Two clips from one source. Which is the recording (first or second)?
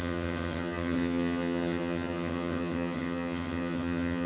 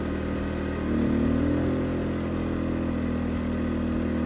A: second